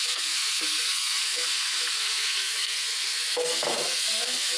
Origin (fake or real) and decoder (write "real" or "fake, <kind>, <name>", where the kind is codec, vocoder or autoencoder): fake, codec, SNAC